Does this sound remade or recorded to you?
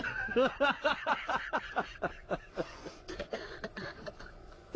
remade